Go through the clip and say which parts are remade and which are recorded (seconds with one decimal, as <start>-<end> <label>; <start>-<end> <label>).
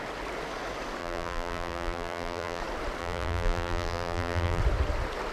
0.0-1.0 recorded; 1.0-2.6 remade; 2.6-3.0 recorded; 3.0-4.6 remade; 4.6-5.3 recorded